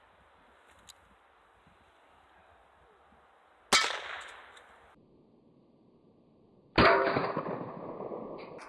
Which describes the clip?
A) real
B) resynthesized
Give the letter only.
A